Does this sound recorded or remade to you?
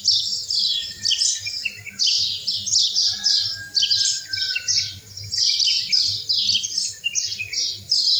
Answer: recorded